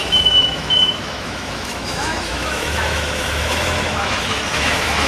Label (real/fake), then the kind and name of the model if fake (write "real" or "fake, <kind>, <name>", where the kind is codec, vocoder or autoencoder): fake, autoencoder, DAC-VAE